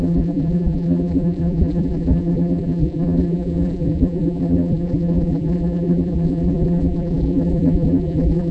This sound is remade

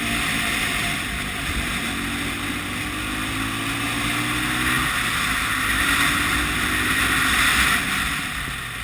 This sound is recorded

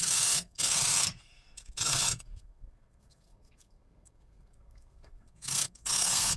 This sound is remade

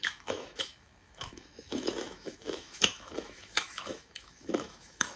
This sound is remade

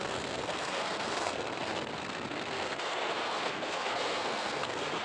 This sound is remade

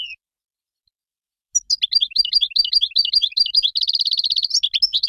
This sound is recorded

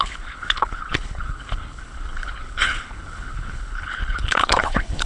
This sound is remade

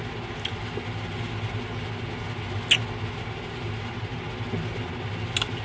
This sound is recorded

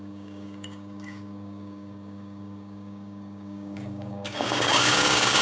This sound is remade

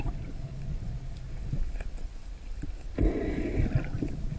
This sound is recorded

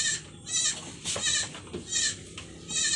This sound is recorded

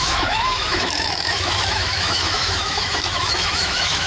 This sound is remade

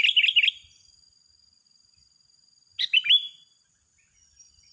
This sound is recorded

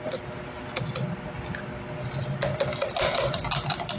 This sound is recorded